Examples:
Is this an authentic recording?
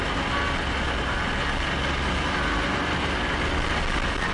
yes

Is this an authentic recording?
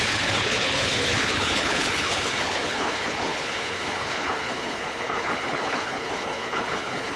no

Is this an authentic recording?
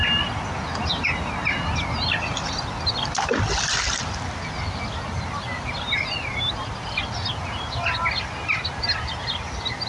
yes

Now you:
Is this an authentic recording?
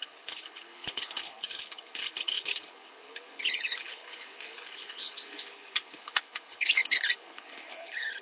no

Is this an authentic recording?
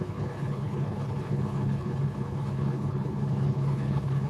no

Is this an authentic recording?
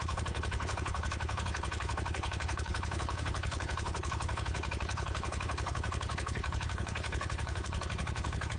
no